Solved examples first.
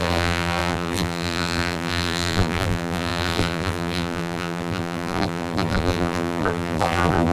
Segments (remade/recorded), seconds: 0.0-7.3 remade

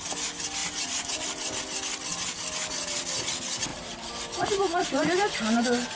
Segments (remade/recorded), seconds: 0.0-0.6 recorded; 0.6-1.6 remade; 1.6-3.7 recorded; 3.7-5.6 remade; 5.6-6.0 recorded

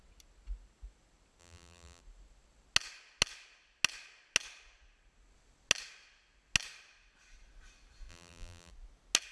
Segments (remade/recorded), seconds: 0.0-1.4 recorded; 1.4-2.0 remade; 2.0-8.1 recorded; 8.1-8.7 remade; 8.7-9.3 recorded

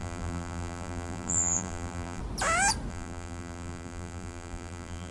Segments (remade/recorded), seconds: 0.0-2.2 remade; 2.2-2.9 recorded; 2.9-5.1 remade

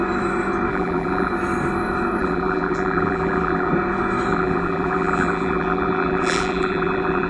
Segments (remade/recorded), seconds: 0.0-0.7 recorded; 0.7-1.3 remade; 1.3-2.2 recorded; 2.2-3.7 remade; 3.7-4.3 recorded; 4.3-7.3 remade

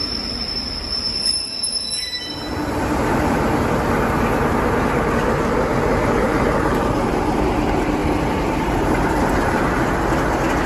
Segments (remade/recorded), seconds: 0.0-5.9 recorded; 5.9-7.4 remade; 7.4-8.0 recorded; 8.0-9.7 remade; 9.7-10.7 recorded